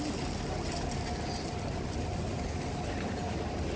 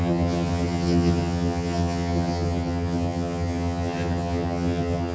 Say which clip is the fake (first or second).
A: second